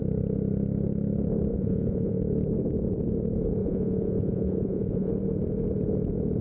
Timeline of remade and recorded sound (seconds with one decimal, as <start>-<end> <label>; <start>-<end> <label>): 0.0-1.5 recorded; 1.5-2.2 remade; 2.2-3.6 recorded; 3.6-5.1 remade; 5.1-6.4 recorded